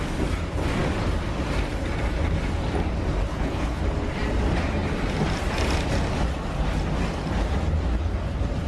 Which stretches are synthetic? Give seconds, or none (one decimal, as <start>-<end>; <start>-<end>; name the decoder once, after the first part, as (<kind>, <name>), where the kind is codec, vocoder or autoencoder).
3.3-3.8 (codec, HILCodec)